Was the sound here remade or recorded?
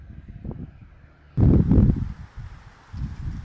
recorded